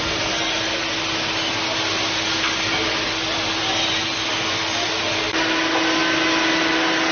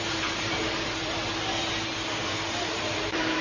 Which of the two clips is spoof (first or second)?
second